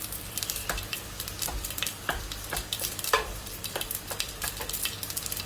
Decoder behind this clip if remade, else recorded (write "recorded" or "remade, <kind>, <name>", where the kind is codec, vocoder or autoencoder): remade, vocoder, BigVGAN v2